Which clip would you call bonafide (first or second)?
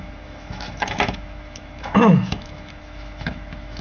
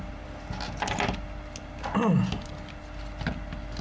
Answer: second